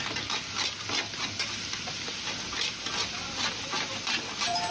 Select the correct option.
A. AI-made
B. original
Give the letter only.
B